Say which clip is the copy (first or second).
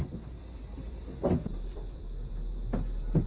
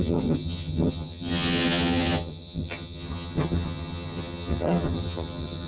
second